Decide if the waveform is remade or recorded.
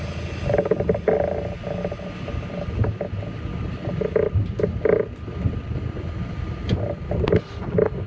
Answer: recorded